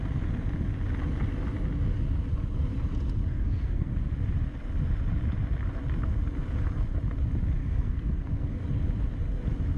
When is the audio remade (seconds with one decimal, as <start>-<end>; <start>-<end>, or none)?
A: 3.3-3.9; 7.6-8.6